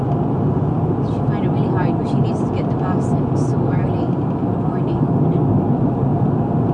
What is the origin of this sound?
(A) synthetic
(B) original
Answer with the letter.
B